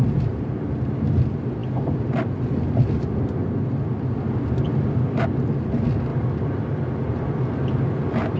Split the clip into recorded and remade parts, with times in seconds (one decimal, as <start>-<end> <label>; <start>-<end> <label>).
0.0-8.4 recorded